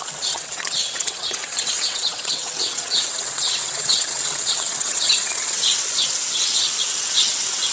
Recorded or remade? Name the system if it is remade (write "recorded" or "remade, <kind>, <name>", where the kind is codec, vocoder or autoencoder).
remade, vocoder, WaveNeXt